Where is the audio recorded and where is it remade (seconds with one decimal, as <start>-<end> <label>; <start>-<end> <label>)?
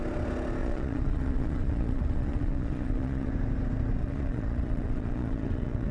0.0-0.6 recorded; 0.6-3.3 remade; 3.3-4.0 recorded; 4.0-5.9 remade